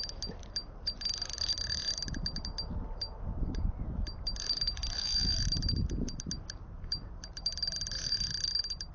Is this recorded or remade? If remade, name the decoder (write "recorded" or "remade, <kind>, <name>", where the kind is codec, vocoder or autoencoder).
recorded